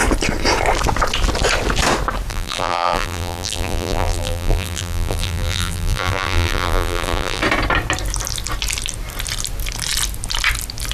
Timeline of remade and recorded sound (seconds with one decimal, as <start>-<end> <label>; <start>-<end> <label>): 0.0-2.3 recorded; 2.3-7.4 remade; 7.4-10.9 recorded

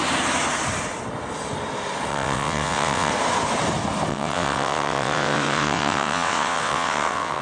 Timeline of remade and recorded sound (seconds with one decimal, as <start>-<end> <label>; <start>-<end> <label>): 0.0-2.1 recorded; 2.1-3.1 remade; 3.1-4.1 recorded; 4.1-7.4 remade

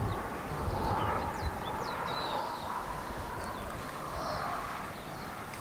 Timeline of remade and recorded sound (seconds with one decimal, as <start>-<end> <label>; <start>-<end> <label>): 0.0-0.5 recorded; 0.5-1.0 remade; 1.0-2.2 recorded; 2.2-3.3 remade; 3.3-3.8 recorded; 3.8-4.8 remade; 4.8-5.6 recorded

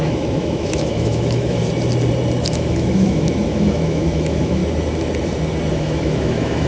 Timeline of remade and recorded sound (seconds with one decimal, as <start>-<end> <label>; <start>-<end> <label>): 0.0-1.6 remade; 1.6-2.5 recorded; 2.5-4.6 remade; 4.6-5.7 recorded; 5.7-6.7 remade

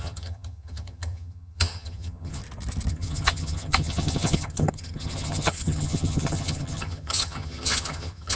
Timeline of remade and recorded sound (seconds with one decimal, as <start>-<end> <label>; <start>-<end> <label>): 0.0-2.4 remade; 2.4-2.9 recorded; 2.9-8.4 remade